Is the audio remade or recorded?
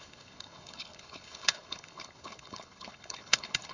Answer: remade